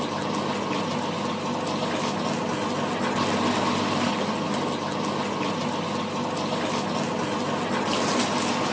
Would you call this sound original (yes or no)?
yes